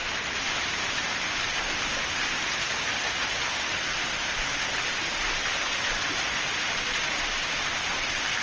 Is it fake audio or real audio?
real